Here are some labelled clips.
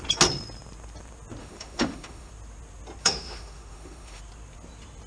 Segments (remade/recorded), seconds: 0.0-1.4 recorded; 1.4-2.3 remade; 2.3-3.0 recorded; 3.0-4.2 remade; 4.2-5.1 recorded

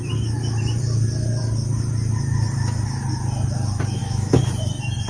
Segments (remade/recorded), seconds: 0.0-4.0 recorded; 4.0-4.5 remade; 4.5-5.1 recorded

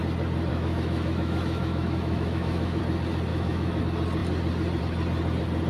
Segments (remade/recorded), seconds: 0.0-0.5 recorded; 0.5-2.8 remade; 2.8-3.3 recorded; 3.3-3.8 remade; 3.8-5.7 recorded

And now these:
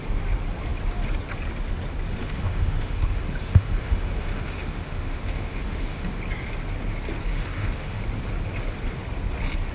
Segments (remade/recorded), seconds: 0.0-2.2 recorded; 2.2-6.2 remade; 6.2-7.3 recorded; 7.3-8.0 remade; 8.0-9.7 recorded

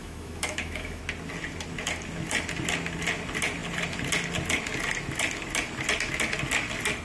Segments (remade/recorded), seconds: 0.0-1.0 remade; 1.0-7.0 recorded